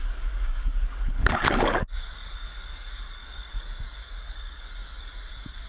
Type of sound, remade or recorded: remade